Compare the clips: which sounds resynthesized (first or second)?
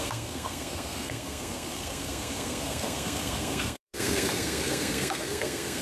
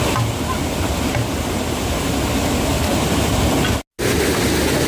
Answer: first